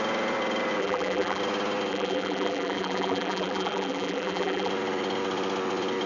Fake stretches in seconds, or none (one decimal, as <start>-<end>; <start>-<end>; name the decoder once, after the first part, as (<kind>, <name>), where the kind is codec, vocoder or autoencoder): 0.8-1.4 (vocoder, BigVGAN v2); 1.9-4.7